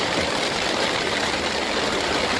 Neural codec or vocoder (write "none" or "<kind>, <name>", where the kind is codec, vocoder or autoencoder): vocoder, BigVGAN v2